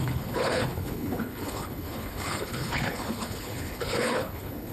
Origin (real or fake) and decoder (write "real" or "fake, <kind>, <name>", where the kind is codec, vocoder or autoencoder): fake, codec, HILCodec